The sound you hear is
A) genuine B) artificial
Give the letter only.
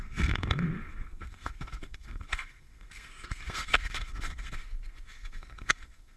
B